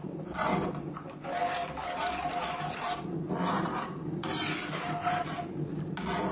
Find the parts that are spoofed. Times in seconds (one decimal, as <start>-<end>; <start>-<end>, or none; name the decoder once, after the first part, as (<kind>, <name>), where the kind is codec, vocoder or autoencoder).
none